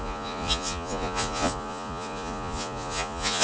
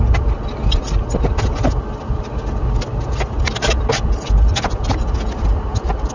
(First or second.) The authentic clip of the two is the second